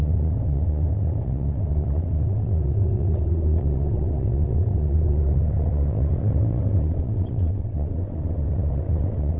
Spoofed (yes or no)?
yes